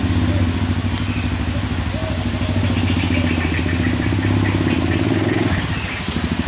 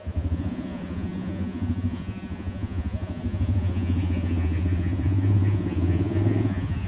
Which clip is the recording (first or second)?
first